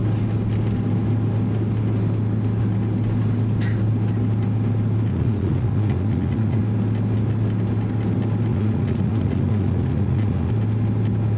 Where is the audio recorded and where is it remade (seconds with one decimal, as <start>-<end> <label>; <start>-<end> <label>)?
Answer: 0.0-5.1 recorded; 5.1-6.6 remade; 6.6-8.5 recorded; 8.5-10.5 remade; 10.5-11.4 recorded